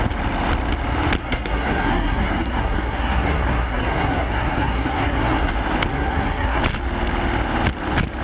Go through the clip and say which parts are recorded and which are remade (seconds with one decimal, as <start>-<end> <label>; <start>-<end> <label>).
0.0-1.2 recorded; 1.2-5.5 remade; 5.5-5.9 recorded; 5.9-6.6 remade; 6.6-8.2 recorded